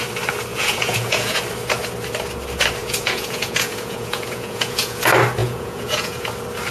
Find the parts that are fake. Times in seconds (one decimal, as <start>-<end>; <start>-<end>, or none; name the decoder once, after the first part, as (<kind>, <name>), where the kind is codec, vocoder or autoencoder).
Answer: 0.5-1.4 (vocoder, Vocos); 2.8-5.0; 5.4-6.3